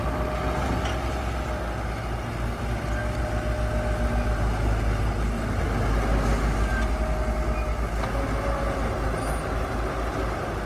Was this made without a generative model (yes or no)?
yes